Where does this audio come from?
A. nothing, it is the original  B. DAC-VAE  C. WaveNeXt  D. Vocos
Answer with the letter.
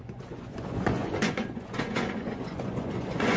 D